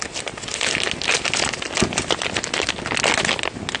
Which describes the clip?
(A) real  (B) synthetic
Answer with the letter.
A